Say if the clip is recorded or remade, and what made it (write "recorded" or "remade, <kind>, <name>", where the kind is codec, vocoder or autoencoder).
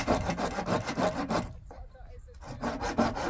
remade, vocoder, BigVGAN v2